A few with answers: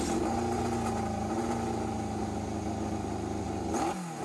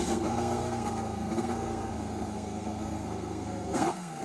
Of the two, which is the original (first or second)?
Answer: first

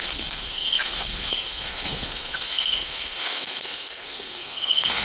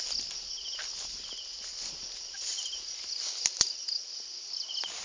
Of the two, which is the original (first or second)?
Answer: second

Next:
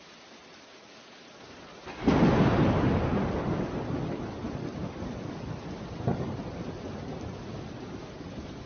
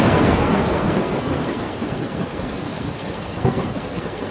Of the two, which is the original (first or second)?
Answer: first